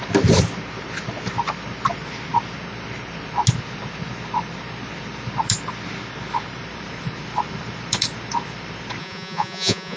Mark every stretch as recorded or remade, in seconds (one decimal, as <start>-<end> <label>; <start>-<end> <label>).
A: 0.0-9.0 recorded; 9.0-10.0 remade